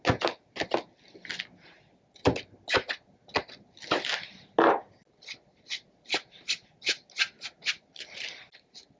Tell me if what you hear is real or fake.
real